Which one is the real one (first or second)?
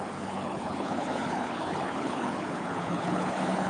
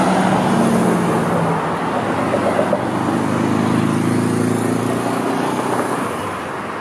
second